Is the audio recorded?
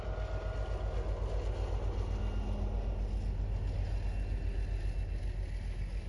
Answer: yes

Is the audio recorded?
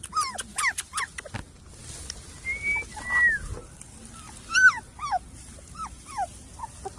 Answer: yes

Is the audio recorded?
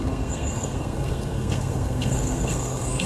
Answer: no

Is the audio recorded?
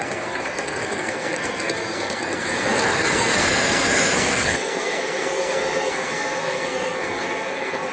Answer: no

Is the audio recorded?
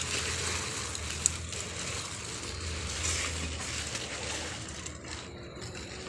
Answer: yes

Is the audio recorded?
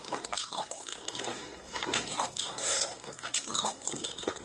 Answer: no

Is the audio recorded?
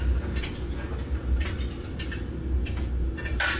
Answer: yes